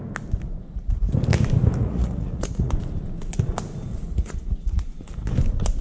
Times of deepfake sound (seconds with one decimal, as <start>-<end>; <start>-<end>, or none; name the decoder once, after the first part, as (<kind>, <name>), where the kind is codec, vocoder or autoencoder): 1.8-2.7 (vocoder, Vocos); 3.9-5.1